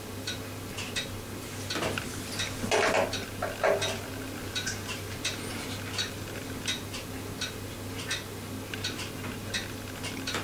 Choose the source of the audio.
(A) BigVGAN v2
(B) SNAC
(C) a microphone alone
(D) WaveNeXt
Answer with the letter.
C